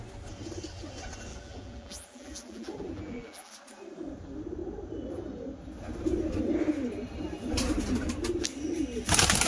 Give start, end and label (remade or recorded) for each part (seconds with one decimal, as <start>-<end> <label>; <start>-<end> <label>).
0.0-1.3 recorded; 1.3-3.5 remade; 3.5-9.5 recorded